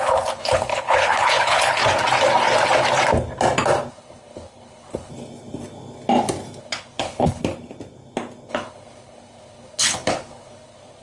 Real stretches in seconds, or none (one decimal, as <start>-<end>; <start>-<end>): 1.8-3.9; 5.1-6.6; 7.4-8.5